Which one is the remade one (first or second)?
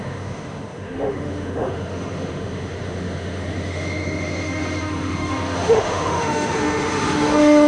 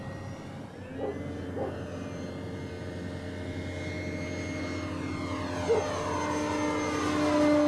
first